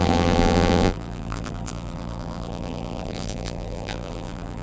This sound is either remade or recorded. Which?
remade